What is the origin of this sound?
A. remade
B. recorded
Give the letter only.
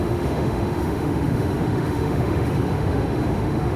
A